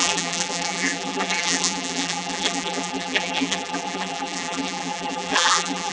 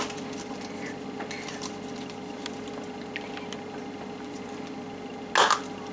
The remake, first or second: first